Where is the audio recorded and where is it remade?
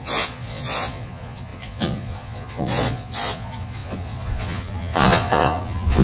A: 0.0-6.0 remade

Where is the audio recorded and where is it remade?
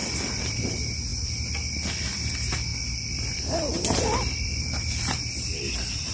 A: 0.0-0.7 remade; 0.7-2.7 recorded; 2.7-5.2 remade; 5.2-6.1 recorded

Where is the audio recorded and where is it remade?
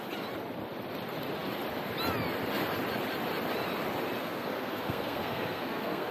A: 0.0-4.2 recorded; 4.2-6.1 remade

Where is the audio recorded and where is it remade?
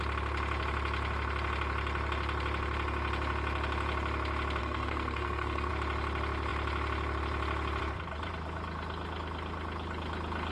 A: 0.0-4.6 recorded; 4.6-5.7 remade; 5.7-10.5 recorded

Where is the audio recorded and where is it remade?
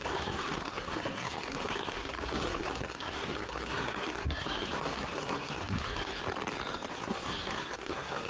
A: 0.0-6.2 remade; 6.2-6.9 recorded; 6.9-8.3 remade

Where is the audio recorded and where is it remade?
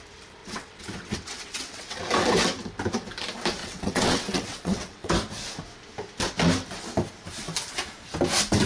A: 0.0-0.4 recorded; 0.4-2.0 remade; 2.0-3.6 recorded; 3.6-5.1 remade; 5.1-8.7 recorded